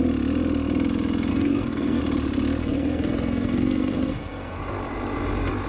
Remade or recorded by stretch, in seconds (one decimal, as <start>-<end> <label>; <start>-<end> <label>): 0.0-1.3 recorded; 1.3-2.0 remade; 2.0-2.6 recorded; 2.6-4.6 remade; 4.6-5.7 recorded